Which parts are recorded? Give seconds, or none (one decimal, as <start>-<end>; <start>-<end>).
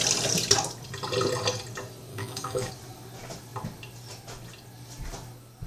0.0-2.1; 2.7-5.7